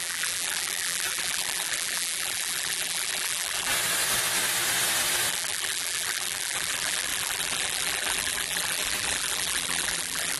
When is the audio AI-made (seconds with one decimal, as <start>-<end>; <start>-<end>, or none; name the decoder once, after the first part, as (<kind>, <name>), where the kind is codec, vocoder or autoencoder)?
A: 0.0-3.7 (vocoder, BigVGAN v2); 5.3-10.4